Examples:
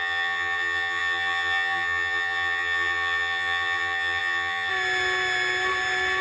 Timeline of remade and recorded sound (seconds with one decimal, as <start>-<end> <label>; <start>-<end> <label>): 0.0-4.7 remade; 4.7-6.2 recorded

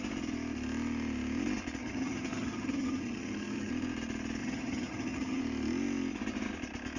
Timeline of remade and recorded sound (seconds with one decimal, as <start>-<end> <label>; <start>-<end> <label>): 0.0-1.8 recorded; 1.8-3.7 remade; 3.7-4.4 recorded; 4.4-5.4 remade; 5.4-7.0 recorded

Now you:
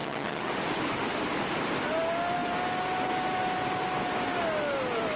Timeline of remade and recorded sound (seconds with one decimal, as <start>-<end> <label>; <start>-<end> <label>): 0.0-0.5 remade; 0.5-5.2 recorded

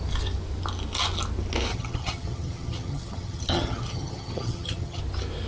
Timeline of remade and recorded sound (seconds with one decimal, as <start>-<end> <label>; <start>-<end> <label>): 0.0-1.7 recorded; 1.7-5.0 remade; 5.0-5.5 recorded

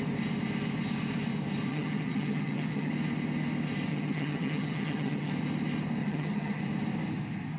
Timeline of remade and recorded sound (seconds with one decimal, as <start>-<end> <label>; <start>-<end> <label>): 0.0-1.7 recorded; 1.7-2.9 remade; 2.9-3.9 recorded; 3.9-5.3 remade; 5.3-6.0 recorded; 6.0-6.6 remade; 6.6-7.6 recorded

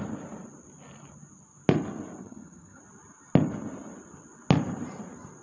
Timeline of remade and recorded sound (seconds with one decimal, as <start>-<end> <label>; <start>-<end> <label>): 0.0-2.2 recorded; 2.2-2.8 remade; 2.8-5.4 recorded